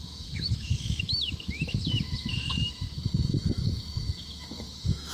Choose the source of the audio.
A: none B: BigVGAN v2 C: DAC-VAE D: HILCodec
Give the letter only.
C